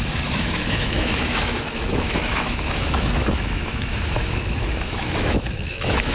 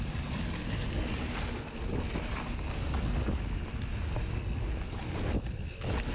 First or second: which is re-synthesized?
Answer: first